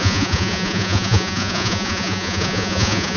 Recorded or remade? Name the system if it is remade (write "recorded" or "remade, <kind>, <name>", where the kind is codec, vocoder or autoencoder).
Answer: remade, vocoder, Vocos